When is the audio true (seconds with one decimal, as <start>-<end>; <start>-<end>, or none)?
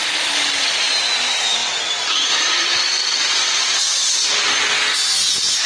0.0-1.6; 4.1-5.7